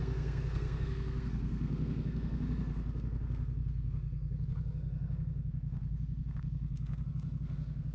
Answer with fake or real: fake